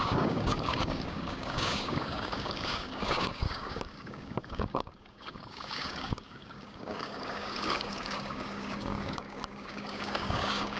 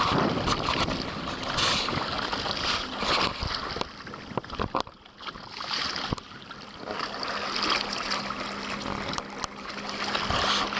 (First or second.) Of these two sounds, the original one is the second